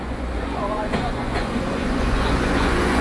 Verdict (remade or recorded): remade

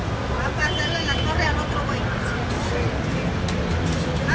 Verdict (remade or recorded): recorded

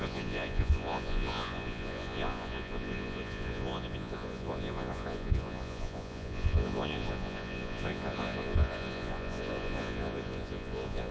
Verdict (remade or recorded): remade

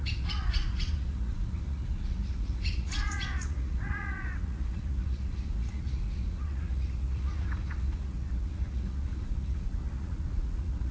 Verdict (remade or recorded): remade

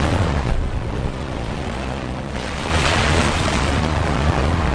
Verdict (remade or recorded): remade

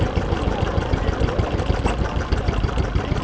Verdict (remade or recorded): recorded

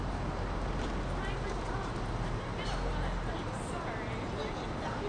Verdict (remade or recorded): recorded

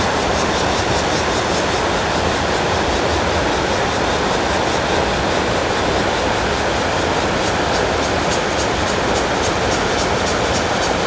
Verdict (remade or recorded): recorded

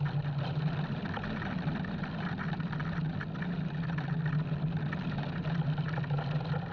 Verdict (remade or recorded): recorded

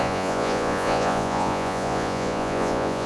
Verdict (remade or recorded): remade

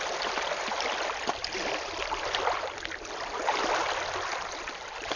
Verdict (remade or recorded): recorded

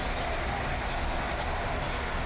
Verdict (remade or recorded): recorded